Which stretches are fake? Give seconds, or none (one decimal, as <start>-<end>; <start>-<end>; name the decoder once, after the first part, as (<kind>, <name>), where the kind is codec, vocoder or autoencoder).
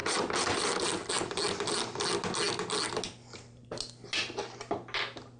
none